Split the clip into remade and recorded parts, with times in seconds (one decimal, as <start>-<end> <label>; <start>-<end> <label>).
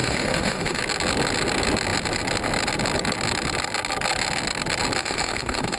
0.0-0.8 remade; 0.8-5.0 recorded; 5.0-5.8 remade